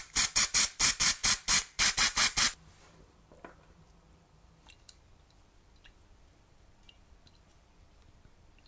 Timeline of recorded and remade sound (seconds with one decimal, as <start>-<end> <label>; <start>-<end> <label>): 0.0-1.2 remade; 1.2-2.8 recorded; 2.8-8.7 remade